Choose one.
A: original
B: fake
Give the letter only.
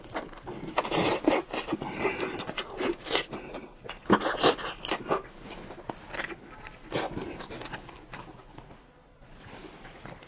A